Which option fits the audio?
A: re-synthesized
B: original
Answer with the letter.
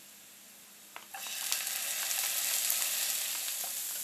B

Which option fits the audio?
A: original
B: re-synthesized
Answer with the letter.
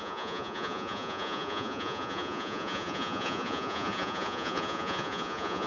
B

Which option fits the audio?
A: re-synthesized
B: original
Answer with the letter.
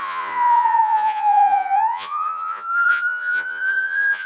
A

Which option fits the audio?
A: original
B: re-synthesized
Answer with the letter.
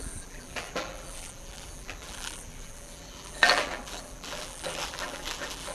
B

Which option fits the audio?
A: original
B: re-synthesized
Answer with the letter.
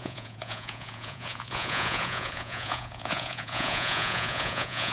B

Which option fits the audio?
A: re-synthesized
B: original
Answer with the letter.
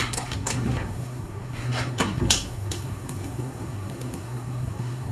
A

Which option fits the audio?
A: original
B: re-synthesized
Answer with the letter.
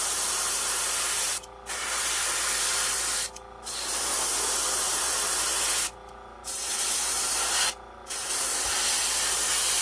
A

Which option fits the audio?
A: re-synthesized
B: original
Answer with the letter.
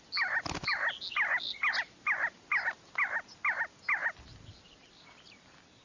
B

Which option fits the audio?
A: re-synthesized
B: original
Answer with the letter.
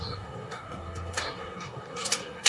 A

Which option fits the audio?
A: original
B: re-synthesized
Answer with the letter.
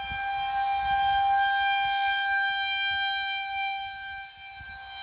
A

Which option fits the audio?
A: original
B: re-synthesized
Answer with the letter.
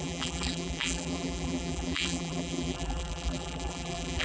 B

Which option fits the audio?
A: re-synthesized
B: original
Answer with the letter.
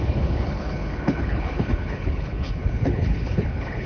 A